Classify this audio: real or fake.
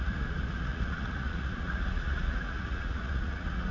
fake